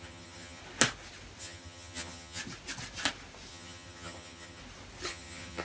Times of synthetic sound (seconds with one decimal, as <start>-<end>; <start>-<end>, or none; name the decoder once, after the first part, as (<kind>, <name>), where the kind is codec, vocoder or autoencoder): 0.0-0.6 (vocoder, HiFi-GAN); 1.4-2.4; 3.5-4.6; 5.1-5.6